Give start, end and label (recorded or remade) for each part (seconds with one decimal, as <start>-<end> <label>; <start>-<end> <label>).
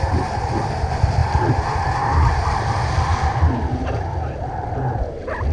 0.0-5.5 recorded